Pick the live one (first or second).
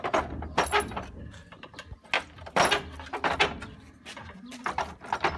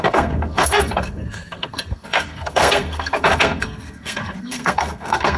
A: first